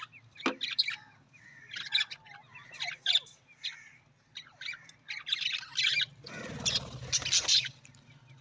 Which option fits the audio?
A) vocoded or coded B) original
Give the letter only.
B